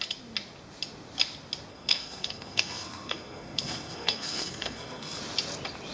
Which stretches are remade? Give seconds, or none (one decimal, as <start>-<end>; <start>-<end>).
1.7-5.2